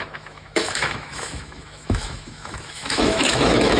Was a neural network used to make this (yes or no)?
yes